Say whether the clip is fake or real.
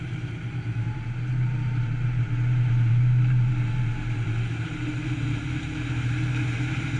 fake